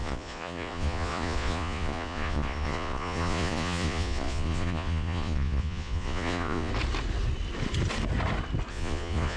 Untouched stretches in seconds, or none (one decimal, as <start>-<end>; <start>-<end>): 6.7-8.7